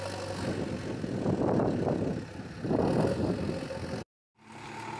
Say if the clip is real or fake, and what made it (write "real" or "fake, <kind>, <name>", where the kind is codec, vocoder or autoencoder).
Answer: real